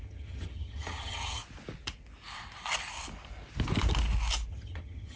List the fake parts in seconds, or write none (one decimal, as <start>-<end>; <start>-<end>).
0.0-1.4; 4.5-5.2